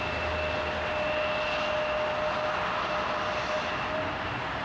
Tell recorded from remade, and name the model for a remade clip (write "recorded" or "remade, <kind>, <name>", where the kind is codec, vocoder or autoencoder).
recorded